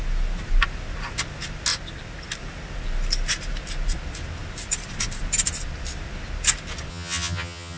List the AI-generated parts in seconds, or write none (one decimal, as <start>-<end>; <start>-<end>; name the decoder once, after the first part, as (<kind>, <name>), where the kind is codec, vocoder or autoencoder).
6.9-7.8 (vocoder, HiFi-GAN)